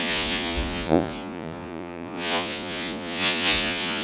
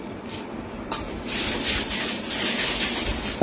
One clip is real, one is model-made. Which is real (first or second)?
second